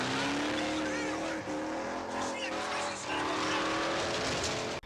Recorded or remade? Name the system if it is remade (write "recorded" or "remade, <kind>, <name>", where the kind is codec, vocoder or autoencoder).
recorded